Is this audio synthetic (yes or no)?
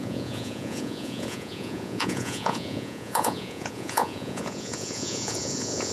yes